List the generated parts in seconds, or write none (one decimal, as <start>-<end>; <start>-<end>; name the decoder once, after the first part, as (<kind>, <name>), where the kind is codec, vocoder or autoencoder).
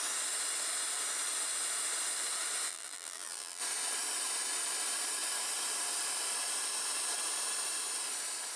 2.7-3.6 (vocoder, BigVGAN v2)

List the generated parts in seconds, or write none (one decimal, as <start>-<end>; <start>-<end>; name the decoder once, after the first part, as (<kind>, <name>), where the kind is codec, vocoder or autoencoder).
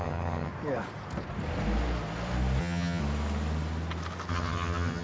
0.0-0.5 (vocoder, HiFi-GAN); 2.6-3.0; 4.3-5.0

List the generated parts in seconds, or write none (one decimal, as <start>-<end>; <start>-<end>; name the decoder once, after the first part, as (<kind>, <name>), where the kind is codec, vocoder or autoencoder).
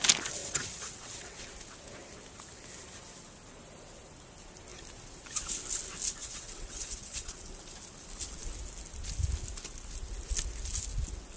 0.4-1.5 (vocoder, WaveNeXt); 6.2-7.5